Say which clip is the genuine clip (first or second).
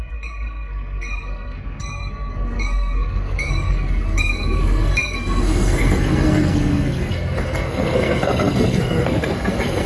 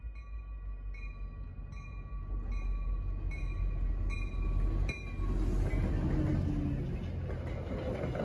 second